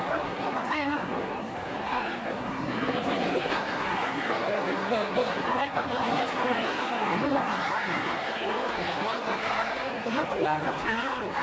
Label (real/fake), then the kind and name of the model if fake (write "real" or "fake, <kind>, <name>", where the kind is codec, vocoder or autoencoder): fake, codec, SNAC